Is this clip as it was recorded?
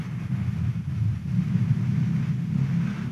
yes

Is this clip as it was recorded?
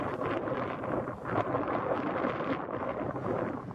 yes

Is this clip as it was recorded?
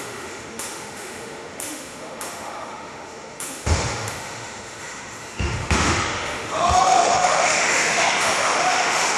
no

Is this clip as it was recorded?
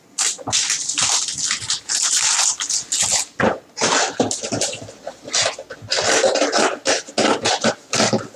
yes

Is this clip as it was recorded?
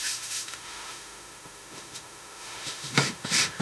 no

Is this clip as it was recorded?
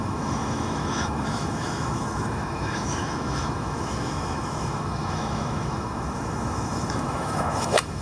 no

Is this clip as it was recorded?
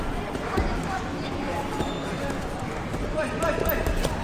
yes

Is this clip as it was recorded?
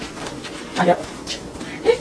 yes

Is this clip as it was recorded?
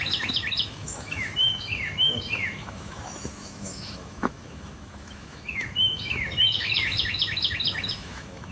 no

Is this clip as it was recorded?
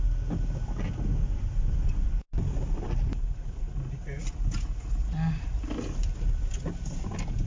yes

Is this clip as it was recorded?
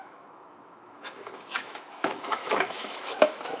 no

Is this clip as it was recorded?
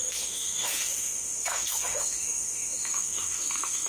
no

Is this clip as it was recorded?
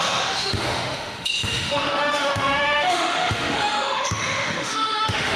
no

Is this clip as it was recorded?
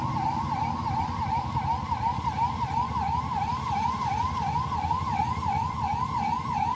yes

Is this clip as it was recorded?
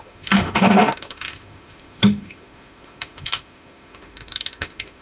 no